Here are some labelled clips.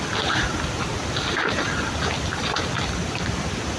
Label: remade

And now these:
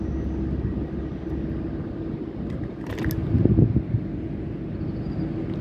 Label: recorded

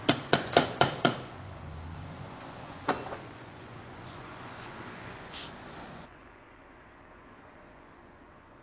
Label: remade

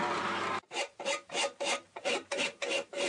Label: remade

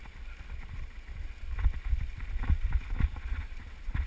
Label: recorded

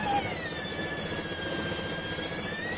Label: recorded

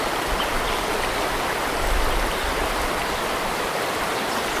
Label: recorded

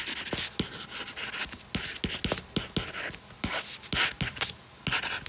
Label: recorded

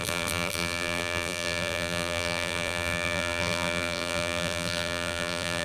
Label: remade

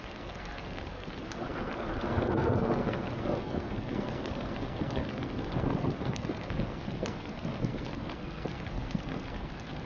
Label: remade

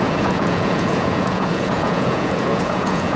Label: remade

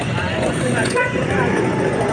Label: remade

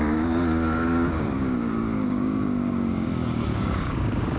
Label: remade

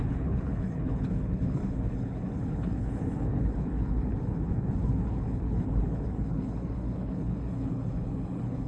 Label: remade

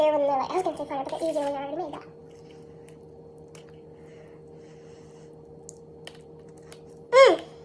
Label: recorded